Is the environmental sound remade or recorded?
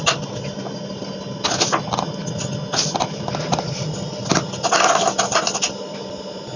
recorded